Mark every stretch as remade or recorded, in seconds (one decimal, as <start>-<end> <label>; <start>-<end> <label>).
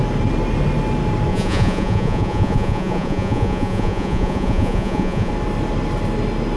0.0-1.3 recorded; 1.3-5.3 remade; 5.3-6.6 recorded